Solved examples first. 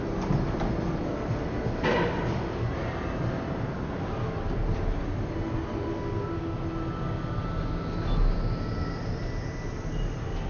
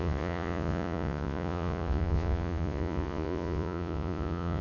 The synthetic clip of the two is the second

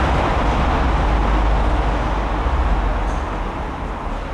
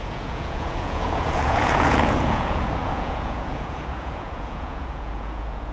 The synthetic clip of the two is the second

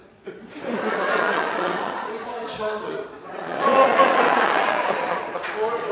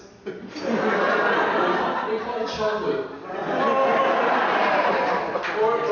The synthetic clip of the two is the first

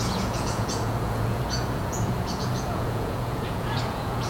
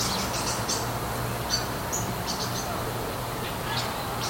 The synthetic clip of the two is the first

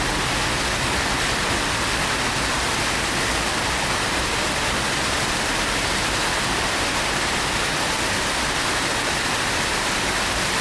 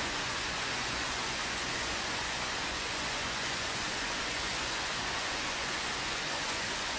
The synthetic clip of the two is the second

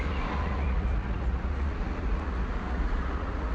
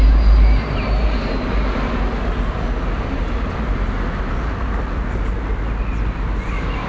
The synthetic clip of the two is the first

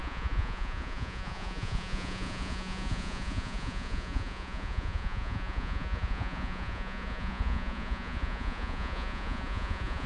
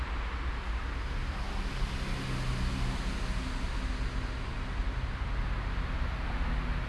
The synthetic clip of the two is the first